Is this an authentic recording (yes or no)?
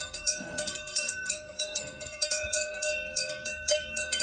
no